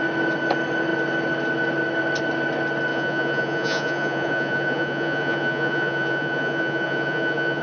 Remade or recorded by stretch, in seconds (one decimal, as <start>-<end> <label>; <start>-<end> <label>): 0.0-2.9 recorded; 2.9-7.6 remade